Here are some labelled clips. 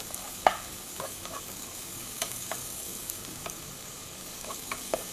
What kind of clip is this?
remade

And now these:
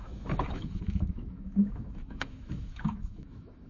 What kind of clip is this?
remade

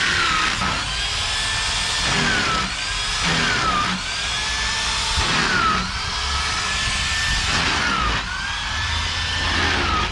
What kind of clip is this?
recorded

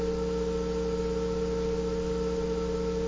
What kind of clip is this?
recorded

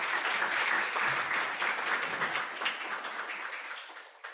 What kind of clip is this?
recorded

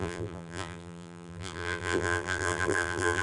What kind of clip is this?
remade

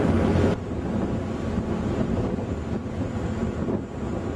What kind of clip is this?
recorded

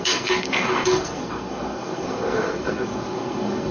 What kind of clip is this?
remade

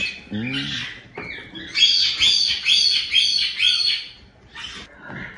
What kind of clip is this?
recorded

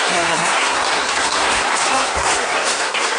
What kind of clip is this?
remade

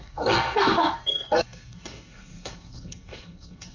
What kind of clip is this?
remade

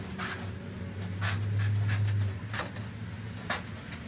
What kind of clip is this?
recorded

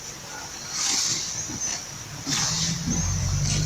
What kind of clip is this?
recorded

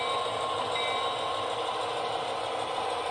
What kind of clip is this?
recorded